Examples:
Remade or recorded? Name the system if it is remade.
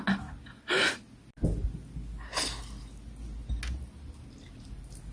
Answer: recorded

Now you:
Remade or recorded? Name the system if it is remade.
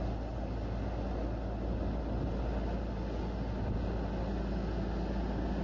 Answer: recorded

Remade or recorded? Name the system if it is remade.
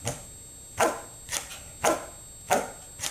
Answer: recorded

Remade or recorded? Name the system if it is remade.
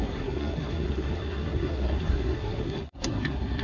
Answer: remade, codec, SNAC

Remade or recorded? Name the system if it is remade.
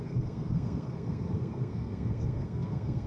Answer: remade, codec, SNAC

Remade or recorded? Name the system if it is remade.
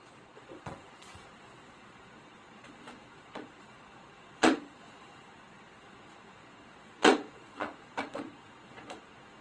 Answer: remade, vocoder, Vocos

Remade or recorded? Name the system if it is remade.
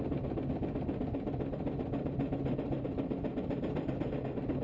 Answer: recorded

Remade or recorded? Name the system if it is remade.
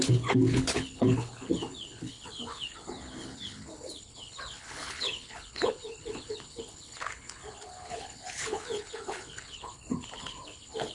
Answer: remade, codec, HILCodec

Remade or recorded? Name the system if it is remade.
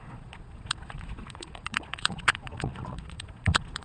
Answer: remade, vocoder, Vocos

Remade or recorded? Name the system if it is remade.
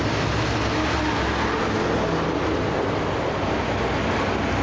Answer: recorded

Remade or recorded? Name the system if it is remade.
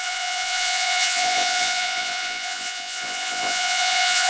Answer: remade, vocoder, Vocos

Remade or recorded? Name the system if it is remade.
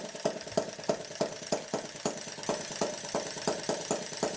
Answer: recorded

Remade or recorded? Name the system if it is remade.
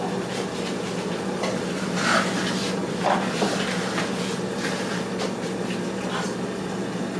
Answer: recorded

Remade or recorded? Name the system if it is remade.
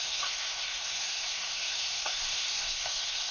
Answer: remade, codec, SNAC